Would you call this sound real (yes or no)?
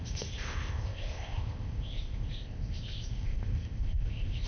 no